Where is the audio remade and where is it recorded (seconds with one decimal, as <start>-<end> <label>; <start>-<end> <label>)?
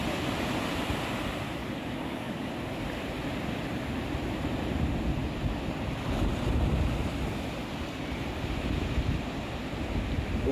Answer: 0.0-1.6 recorded; 1.6-2.5 remade; 2.5-10.5 recorded